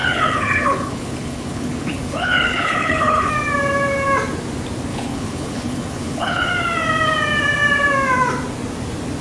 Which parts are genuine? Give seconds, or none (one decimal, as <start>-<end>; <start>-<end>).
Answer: 3.3-4.9; 6.5-9.2